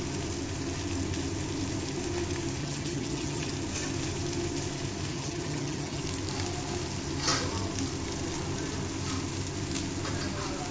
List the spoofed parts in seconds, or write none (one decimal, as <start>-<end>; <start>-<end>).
2.6-3.5; 5.1-6.0